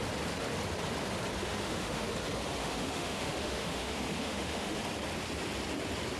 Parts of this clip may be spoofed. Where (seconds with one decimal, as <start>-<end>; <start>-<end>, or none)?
1.4-2.1; 2.6-4.8